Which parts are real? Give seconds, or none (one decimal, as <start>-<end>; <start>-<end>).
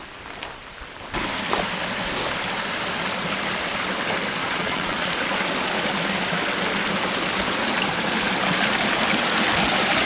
0.0-4.4; 5.1-10.0